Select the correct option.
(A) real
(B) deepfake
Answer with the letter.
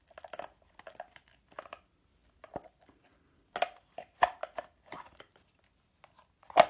A